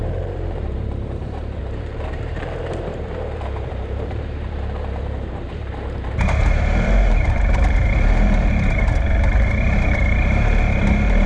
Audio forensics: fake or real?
fake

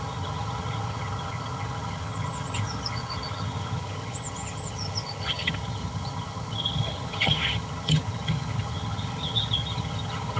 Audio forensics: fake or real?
fake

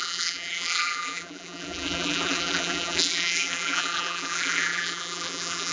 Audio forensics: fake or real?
fake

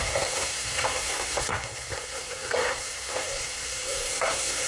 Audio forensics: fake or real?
fake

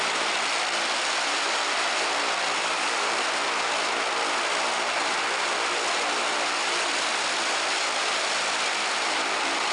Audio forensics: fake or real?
real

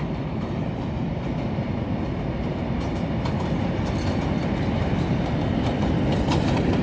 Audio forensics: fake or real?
real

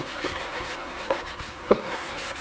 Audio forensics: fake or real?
fake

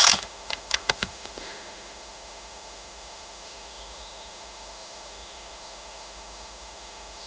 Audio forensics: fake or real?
fake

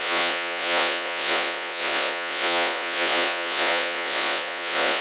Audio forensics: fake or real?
fake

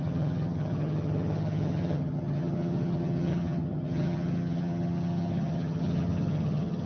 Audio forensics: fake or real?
fake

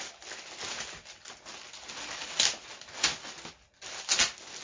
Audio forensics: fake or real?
real